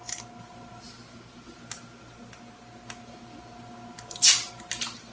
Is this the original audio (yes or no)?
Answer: yes